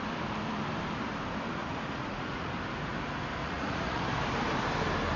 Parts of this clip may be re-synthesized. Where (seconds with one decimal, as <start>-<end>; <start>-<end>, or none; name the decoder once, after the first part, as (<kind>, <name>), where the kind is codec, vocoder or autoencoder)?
1.6-2.5 (vocoder, Vocos); 3.4-4.0